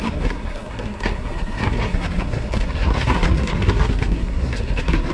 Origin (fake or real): fake